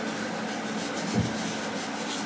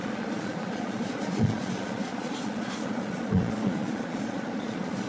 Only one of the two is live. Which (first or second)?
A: first